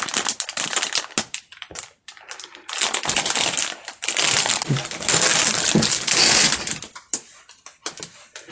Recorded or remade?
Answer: recorded